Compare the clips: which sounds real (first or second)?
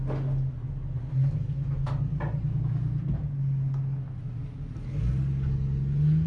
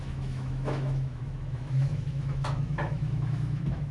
first